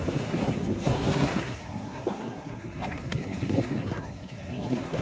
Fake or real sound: fake